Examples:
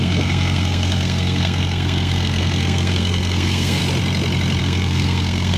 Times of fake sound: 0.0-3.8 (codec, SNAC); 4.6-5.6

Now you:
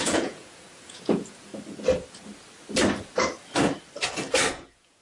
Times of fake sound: 0.0-1.5 (vocoder, Vocos); 4.5-5.0

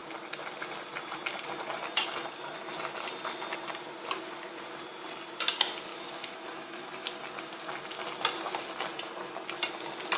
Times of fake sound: 5.9-6.9 (autoencoder, DAC-VAE)

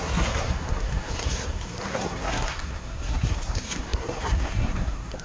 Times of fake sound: 0.0-5.2 (codec, SNAC)

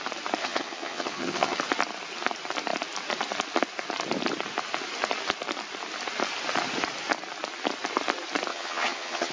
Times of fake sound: 0.4-1.6 (vocoder, HiFi-GAN); 8.5-9.3

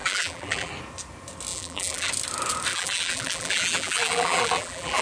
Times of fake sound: 0.0-0.7 (vocoder, BigVGAN v2); 1.5-2.1; 2.7-5.0

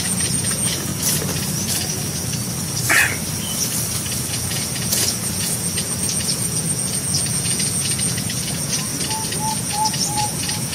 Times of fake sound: 0.0-0.9 (vocoder, Vocos); 4.3-8.9; 9.5-10.7